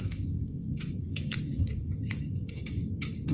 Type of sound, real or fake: fake